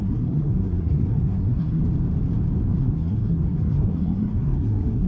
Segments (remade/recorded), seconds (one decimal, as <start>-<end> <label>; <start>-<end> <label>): 0.0-1.8 remade; 1.8-2.8 recorded; 2.8-5.1 remade